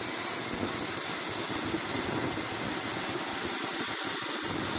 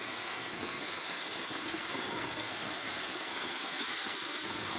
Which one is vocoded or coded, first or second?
second